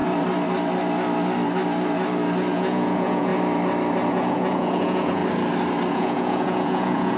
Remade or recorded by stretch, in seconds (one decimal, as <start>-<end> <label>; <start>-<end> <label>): 0.0-2.5 recorded; 2.5-3.3 remade; 3.3-4.1 recorded; 4.1-5.2 remade; 5.2-5.9 recorded; 5.9-7.2 remade